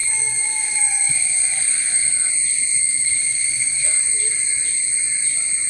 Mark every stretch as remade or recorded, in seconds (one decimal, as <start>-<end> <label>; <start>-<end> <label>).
0.0-2.3 remade; 2.3-2.8 recorded; 2.8-4.0 remade; 4.0-5.7 recorded